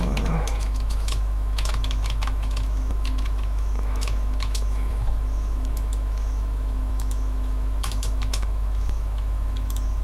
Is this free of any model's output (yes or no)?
no